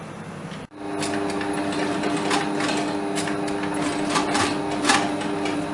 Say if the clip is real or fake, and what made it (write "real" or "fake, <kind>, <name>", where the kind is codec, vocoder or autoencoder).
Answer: real